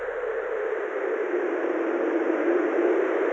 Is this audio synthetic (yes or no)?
no